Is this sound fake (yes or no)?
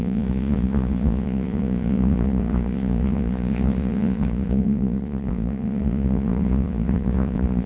yes